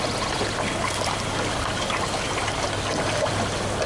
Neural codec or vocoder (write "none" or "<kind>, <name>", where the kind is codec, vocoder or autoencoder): none